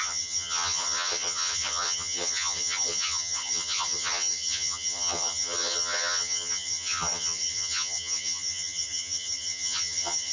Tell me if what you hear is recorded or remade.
remade